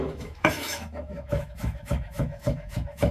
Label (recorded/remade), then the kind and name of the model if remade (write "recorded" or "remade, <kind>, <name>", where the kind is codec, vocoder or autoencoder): remade, autoencoder, DAC-VAE